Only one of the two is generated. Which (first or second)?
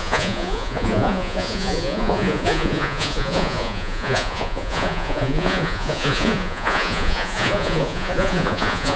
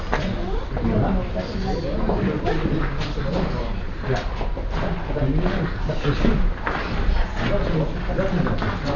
first